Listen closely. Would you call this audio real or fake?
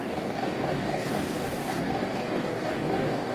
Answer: fake